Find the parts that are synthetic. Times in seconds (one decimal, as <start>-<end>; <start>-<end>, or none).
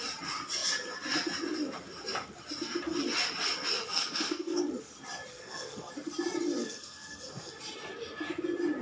3.7-4.6; 5.3-5.9; 6.6-7.6